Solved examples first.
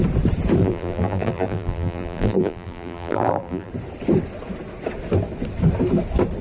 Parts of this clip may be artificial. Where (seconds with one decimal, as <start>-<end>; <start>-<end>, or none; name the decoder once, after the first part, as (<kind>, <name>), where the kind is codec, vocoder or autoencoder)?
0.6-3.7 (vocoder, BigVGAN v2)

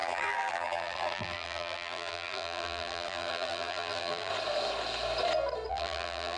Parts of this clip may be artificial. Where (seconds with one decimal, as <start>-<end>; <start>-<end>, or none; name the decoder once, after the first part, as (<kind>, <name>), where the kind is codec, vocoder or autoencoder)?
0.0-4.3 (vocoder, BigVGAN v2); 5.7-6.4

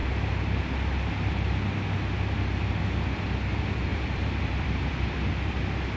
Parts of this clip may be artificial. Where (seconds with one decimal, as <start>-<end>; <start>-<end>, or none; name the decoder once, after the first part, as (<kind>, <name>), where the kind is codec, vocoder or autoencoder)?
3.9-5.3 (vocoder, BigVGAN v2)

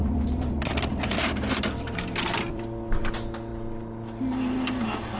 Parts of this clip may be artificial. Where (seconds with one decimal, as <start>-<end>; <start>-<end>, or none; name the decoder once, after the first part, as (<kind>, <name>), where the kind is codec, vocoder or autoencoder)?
0.0-3.1 (vocoder, BigVGAN v2)

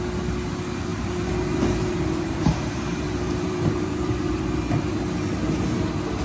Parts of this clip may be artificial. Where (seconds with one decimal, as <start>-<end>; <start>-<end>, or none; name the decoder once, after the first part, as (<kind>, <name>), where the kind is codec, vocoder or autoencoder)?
0.9-4.4 (vocoder, BigVGAN v2)

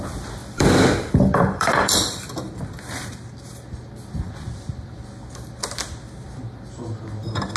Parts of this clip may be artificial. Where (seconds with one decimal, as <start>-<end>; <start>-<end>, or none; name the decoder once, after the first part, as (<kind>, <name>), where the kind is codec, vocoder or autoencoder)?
0.4-2.6 (vocoder, BigVGAN v2)

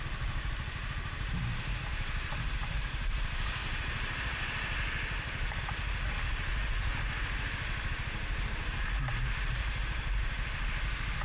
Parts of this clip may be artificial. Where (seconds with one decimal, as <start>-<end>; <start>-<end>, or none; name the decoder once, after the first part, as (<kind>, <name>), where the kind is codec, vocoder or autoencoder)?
1.9-3.2 (vocoder, BigVGAN v2)

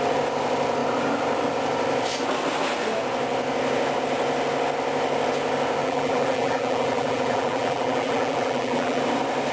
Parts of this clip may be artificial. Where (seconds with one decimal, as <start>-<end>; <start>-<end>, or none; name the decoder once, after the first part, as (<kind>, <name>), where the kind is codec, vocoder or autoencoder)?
5.8-9.0 (vocoder, BigVGAN v2)